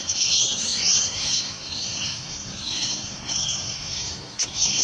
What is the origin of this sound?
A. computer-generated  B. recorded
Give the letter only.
A